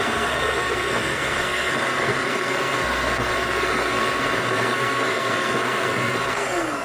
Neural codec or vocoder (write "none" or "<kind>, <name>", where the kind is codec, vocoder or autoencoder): codec, SNAC